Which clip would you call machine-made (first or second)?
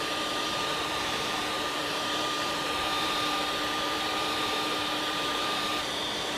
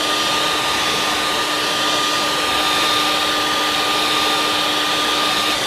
first